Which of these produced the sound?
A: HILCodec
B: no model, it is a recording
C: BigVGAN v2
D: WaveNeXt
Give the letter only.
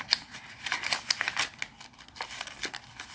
B